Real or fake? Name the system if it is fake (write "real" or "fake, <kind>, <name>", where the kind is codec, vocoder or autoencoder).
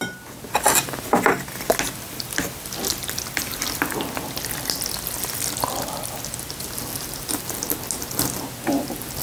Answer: real